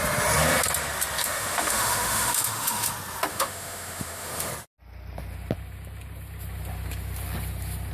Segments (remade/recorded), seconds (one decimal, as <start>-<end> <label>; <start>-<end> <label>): 0.0-1.2 recorded; 1.2-2.9 remade; 2.9-3.3 recorded; 3.3-4.5 remade; 4.5-7.9 recorded